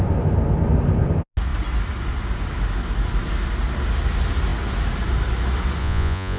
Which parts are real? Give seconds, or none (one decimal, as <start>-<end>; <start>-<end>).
0.0-5.8

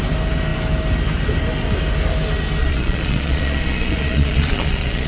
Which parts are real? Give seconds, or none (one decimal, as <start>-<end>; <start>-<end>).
0.0-2.6

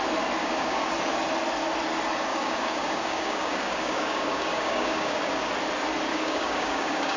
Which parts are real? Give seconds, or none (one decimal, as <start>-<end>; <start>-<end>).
0.0-0.4; 0.9-2.3; 5.5-6.1

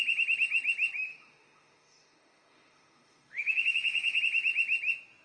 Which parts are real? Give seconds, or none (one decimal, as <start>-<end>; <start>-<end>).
0.0-1.1; 4.2-5.2

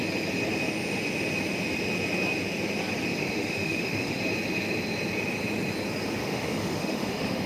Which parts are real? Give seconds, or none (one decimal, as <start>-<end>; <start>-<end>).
0.0-3.2; 4.2-6.2

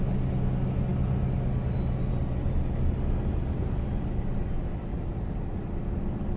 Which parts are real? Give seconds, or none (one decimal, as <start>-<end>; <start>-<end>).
0.0-4.9; 5.7-6.4

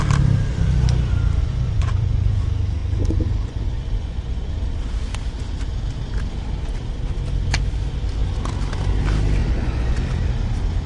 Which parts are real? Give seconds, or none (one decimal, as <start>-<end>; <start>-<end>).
0.0-1.4; 2.4-2.8; 4.5-9.4; 10.0-10.9